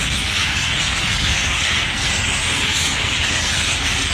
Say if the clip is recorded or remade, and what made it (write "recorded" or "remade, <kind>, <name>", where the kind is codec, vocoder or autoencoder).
remade, codec, SNAC